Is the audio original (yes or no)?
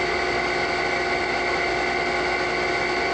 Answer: yes